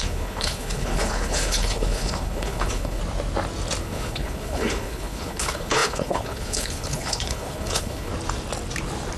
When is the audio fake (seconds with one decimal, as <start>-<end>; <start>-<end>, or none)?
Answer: 0.0-3.0; 3.8-8.1